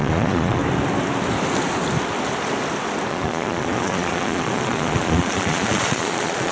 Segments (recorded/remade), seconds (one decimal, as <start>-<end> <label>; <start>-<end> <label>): 0.0-0.6 remade; 0.6-3.1 recorded; 3.1-6.5 remade